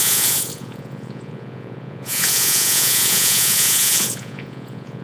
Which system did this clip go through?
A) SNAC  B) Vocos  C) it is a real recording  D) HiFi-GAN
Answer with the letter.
B